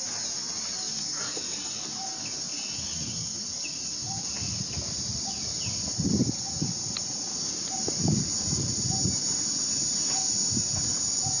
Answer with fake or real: real